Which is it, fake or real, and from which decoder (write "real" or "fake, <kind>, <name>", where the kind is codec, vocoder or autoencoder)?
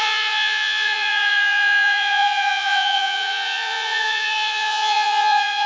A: fake, vocoder, Vocos